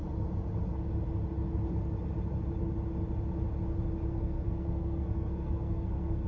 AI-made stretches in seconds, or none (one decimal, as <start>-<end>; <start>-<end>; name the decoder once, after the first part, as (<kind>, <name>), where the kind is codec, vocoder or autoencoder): 4.1-6.3 (codec, SNAC)